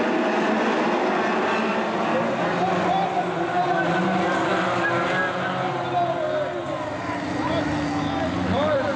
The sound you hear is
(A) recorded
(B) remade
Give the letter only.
A